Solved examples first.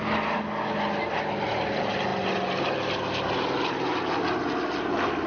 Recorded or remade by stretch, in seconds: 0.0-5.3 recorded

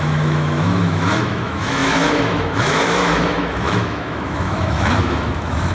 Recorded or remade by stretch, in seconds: 0.0-5.7 remade

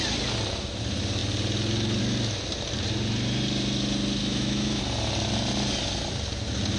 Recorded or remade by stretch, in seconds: 0.0-4.2 recorded; 4.2-4.8 remade; 4.8-6.8 recorded

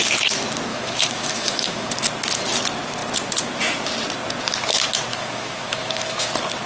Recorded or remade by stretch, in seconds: 0.0-0.7 recorded; 0.7-1.9 remade; 1.9-5.1 recorded; 5.1-6.3 remade; 6.3-6.7 recorded

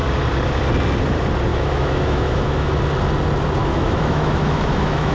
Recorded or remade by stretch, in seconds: 0.0-1.5 recorded; 1.5-2.7 remade; 2.7-3.6 recorded; 3.6-5.1 remade

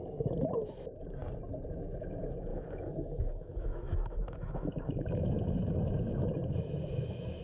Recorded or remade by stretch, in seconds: 0.0-1.2 remade; 1.2-1.7 recorded; 1.7-7.4 remade

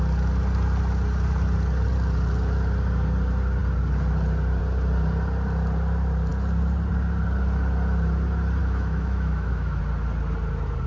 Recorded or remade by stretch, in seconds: 0.0-8.6 recorded; 8.6-9.8 remade; 9.8-10.9 recorded